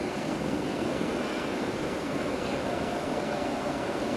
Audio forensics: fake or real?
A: fake